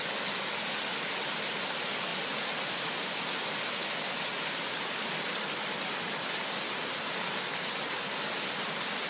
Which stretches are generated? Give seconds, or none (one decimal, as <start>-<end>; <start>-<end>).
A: none